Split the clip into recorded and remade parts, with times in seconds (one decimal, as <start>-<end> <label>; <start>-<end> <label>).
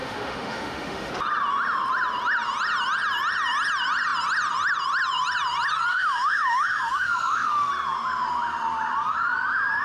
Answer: 0.0-1.1 remade; 1.1-5.9 recorded; 5.9-7.7 remade; 7.7-9.8 recorded